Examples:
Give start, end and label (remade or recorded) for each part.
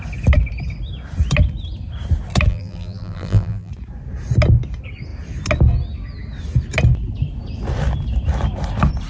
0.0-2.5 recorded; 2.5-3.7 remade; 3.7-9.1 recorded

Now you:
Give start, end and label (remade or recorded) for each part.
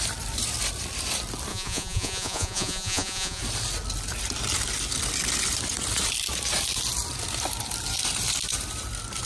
0.0-1.5 recorded; 1.5-3.4 remade; 3.4-9.3 recorded